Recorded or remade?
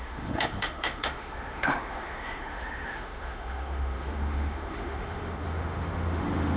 remade